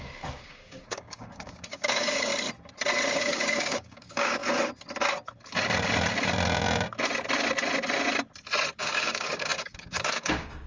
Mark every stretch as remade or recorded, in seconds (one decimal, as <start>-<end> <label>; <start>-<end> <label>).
0.0-2.3 remade; 2.3-3.1 recorded; 3.1-4.4 remade; 4.4-8.8 recorded; 8.8-10.7 remade